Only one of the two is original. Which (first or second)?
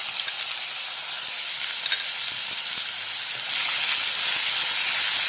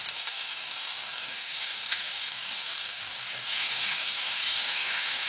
first